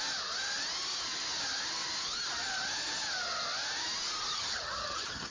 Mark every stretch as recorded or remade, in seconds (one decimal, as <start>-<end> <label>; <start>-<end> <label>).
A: 0.0-4.3 recorded; 4.3-5.3 remade